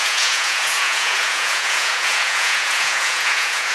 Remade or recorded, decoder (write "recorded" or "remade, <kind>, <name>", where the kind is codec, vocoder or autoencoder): remade, vocoder, Vocos